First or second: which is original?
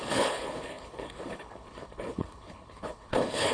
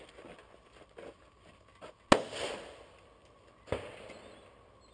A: second